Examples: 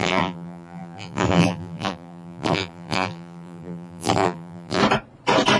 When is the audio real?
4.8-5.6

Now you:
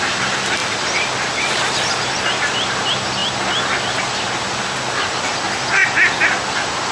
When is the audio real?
0.0-5.8; 6.4-6.9

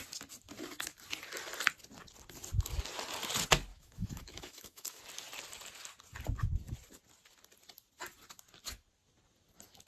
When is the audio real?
0.0-3.7; 5.0-9.9

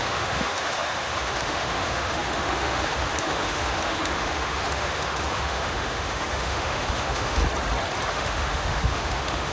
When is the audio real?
7.4-8.1

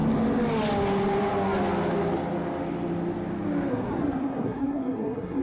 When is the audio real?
0.0-3.7

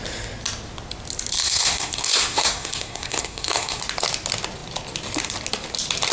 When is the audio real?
0.0-1.4; 3.8-6.1